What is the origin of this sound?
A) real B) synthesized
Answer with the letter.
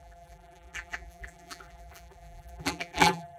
B